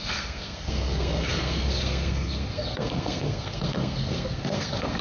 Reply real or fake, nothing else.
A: fake